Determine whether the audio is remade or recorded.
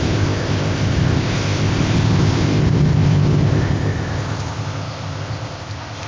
remade